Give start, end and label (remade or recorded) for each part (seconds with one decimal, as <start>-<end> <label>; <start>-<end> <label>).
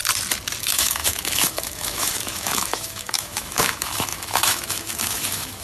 0.0-0.6 recorded; 0.6-5.6 remade